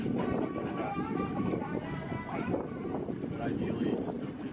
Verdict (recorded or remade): recorded